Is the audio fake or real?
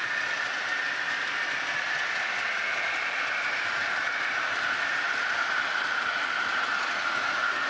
real